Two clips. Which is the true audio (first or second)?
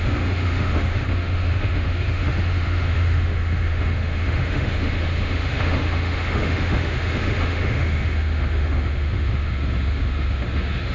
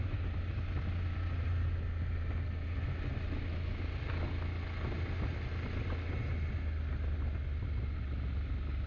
second